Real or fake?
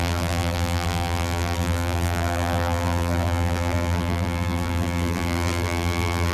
fake